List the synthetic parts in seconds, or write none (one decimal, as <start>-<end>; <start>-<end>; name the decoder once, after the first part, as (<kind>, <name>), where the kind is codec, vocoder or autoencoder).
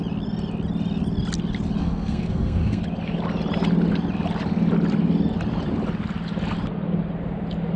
1.8-2.8 (codec, SNAC)